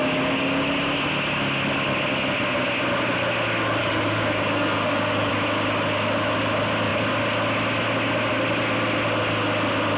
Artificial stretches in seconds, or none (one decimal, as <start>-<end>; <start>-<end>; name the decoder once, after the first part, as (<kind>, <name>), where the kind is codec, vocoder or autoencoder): 3.8-5.3 (codec, DAC)